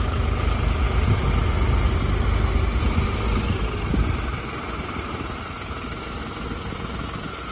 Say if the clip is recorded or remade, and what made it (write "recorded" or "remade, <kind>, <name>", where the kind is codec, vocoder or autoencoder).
recorded